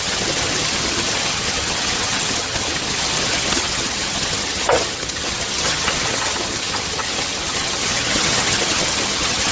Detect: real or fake fake